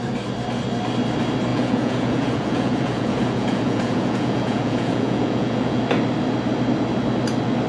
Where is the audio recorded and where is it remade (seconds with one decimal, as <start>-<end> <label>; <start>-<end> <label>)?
0.0-1.5 recorded; 1.5-5.8 remade; 5.8-7.7 recorded